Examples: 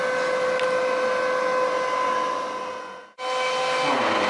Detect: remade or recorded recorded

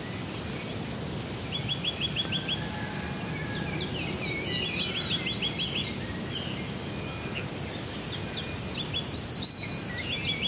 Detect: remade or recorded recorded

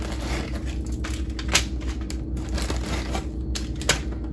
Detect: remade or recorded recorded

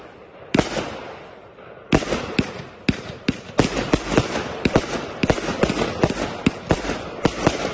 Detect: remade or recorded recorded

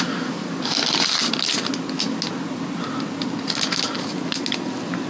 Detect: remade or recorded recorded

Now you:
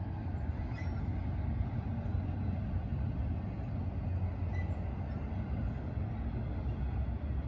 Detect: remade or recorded recorded